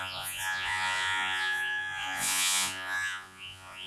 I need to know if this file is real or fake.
fake